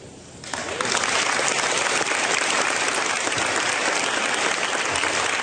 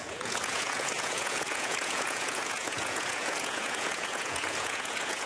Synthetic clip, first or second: second